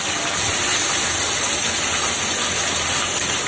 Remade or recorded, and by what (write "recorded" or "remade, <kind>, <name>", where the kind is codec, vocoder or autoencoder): recorded